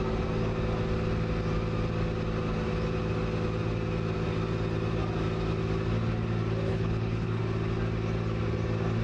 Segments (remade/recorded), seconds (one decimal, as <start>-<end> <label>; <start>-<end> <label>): 0.0-6.7 recorded; 6.7-7.4 remade; 7.4-9.0 recorded

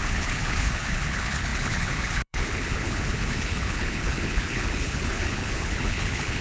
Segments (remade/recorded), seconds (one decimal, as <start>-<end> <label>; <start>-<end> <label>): 0.0-6.4 remade

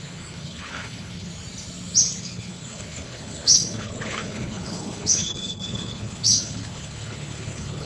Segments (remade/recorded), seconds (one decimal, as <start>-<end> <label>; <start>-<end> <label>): 0.0-1.3 remade; 1.3-2.2 recorded; 2.2-7.9 remade

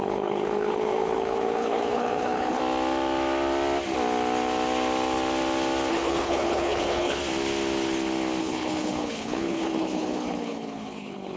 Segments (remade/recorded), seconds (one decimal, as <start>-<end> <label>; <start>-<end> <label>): 0.0-2.6 remade; 2.6-5.9 recorded; 5.9-7.2 remade; 7.2-8.4 recorded; 8.4-11.4 remade